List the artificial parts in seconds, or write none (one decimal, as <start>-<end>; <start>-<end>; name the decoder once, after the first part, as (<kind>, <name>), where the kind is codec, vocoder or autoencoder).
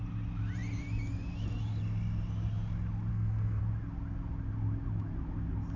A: 3.1-3.6 (codec, SNAC)